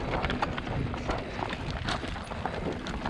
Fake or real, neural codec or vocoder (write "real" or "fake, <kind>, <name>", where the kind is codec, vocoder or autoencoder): real